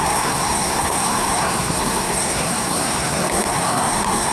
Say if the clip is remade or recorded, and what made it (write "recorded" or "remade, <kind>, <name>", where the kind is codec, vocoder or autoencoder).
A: remade, codec, SNAC